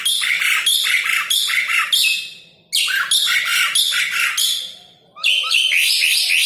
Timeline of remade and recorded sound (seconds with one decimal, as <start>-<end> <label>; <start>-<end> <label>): 0.0-6.5 recorded